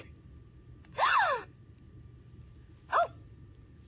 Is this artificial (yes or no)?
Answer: no